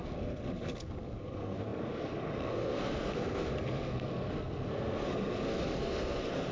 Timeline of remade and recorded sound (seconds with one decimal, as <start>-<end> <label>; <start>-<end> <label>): 0.0-6.5 remade